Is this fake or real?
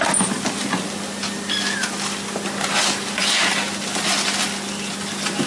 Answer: real